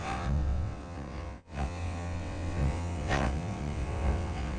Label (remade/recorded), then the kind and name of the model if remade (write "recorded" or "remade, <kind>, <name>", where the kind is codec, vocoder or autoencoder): remade, vocoder, WaveNeXt